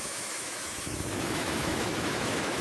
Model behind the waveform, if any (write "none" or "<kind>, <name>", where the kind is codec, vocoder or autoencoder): autoencoder, DAC-VAE